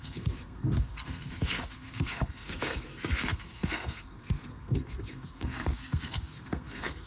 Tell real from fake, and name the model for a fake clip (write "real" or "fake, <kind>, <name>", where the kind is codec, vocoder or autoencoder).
fake, codec, SNAC